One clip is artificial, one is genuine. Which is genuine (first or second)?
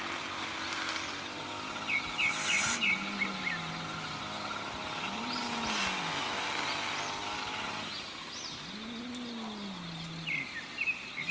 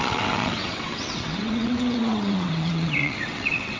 first